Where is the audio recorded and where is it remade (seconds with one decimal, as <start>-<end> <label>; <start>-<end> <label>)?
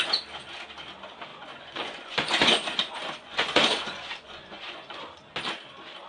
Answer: 0.0-1.3 recorded; 1.3-5.0 remade; 5.0-6.1 recorded